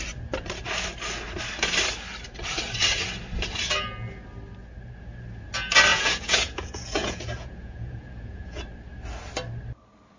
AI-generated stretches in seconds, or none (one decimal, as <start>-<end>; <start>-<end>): 5.9-8.6